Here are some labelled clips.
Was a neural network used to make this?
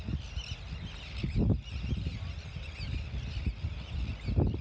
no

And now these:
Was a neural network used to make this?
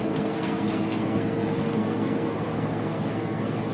yes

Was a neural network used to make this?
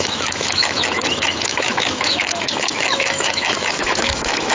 yes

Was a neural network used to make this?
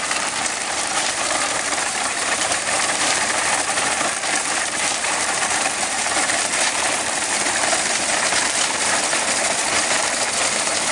yes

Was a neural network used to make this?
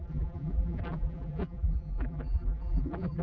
yes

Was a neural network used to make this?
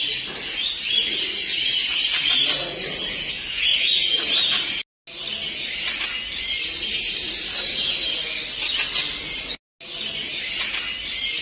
no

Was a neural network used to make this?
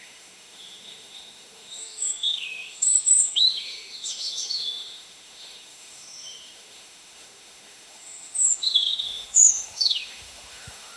yes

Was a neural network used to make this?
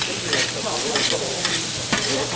no